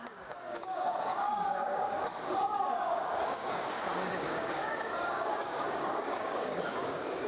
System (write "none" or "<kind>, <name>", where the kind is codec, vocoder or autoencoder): codec, DAC